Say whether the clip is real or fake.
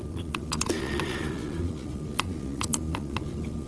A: fake